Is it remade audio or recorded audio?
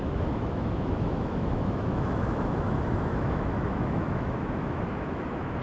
remade